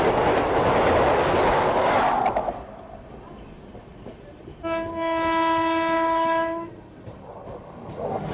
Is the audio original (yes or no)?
yes